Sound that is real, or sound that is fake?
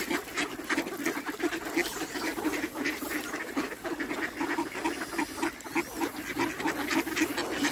real